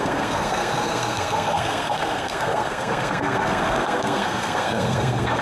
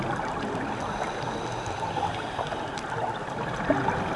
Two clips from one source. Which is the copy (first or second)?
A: first